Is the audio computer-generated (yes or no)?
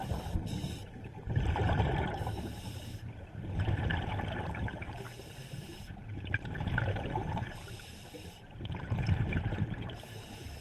yes